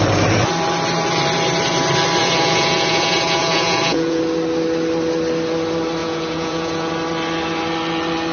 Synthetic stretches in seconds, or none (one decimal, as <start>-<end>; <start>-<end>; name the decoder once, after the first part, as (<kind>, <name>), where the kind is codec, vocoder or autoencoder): 2.2-4.2 (vocoder, Vocos); 6.0-6.9